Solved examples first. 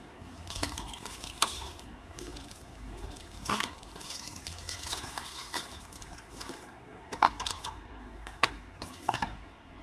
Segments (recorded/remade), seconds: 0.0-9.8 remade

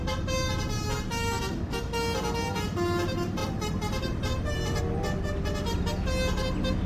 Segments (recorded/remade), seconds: 0.0-3.4 recorded; 3.4-4.8 remade; 4.8-6.9 recorded

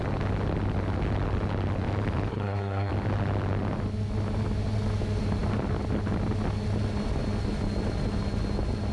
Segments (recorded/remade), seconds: 0.0-2.3 recorded; 2.3-2.9 remade; 2.9-8.9 recorded

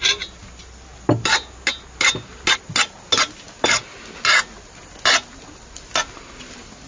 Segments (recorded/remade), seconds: 0.0-6.9 recorded

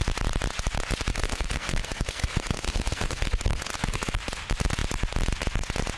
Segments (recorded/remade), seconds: 0.0-1.1 recorded; 1.1-4.2 remade; 4.2-6.0 recorded